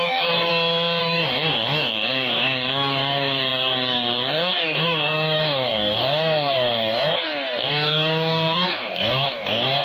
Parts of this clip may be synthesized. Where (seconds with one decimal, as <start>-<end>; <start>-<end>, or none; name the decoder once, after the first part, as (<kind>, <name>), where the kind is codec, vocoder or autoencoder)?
0.0-0.5 (codec, DAC); 1.0-9.8